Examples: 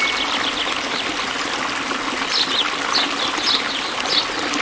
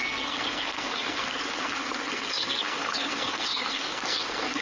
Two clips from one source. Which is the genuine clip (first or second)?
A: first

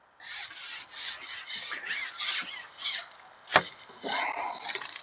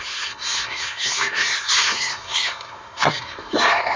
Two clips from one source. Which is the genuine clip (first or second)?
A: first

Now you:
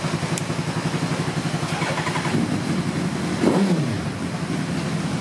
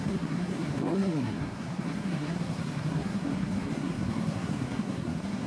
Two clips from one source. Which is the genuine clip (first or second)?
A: first